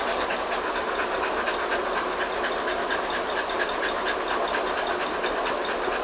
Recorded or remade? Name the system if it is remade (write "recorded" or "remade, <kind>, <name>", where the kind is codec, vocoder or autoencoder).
recorded